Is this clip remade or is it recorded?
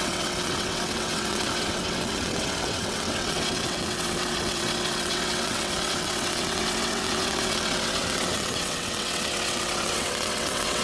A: remade